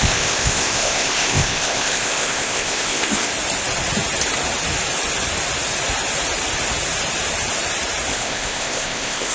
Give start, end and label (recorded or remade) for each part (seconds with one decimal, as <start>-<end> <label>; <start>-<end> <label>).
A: 0.0-3.3 remade; 3.3-8.1 recorded; 8.1-9.3 remade